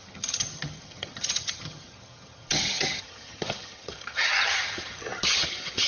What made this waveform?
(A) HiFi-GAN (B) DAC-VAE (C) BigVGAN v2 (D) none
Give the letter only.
A